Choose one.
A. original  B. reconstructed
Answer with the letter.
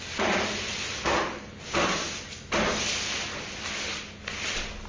A